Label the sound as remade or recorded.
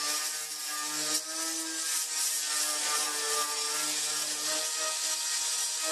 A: recorded